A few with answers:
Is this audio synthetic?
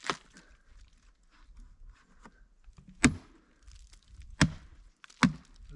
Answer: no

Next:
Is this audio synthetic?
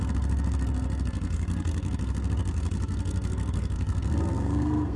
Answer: yes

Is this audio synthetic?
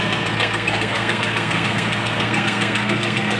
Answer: yes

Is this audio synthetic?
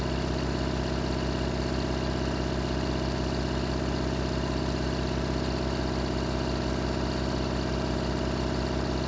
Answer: no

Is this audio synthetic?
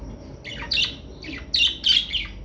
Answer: no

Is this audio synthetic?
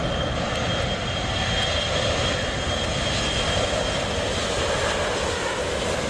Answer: no